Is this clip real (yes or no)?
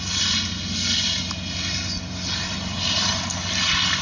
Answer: yes